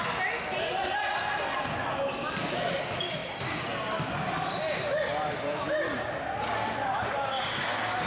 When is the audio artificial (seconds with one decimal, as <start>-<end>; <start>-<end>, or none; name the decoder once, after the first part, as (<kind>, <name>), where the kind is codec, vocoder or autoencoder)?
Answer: none